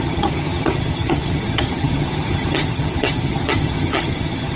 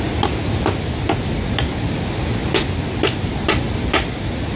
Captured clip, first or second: second